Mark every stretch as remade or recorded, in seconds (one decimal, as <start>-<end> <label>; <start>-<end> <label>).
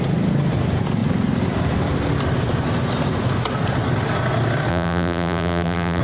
0.0-4.7 recorded; 4.7-6.0 remade